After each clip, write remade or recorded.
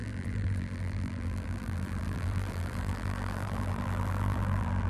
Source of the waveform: remade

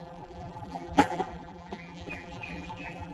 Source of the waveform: remade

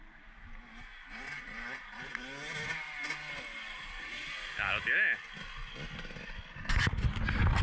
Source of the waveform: recorded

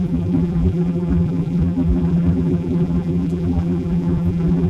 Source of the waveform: remade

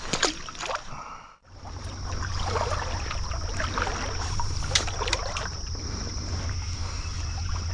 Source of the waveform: recorded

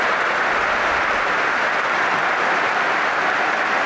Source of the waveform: recorded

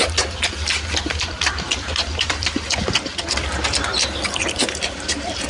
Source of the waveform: remade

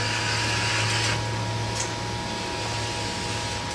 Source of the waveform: recorded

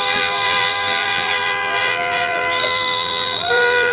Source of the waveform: remade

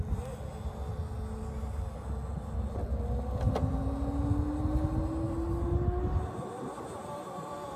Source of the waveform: recorded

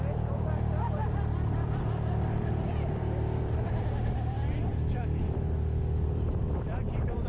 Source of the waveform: remade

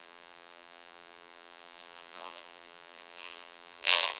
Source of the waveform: remade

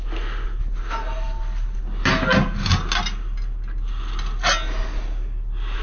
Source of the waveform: recorded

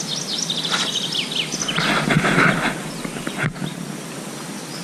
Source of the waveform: recorded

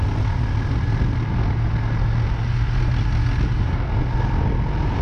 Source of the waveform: recorded